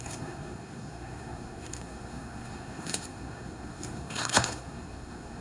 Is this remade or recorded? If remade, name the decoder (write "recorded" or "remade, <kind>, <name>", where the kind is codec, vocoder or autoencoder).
remade, codec, SNAC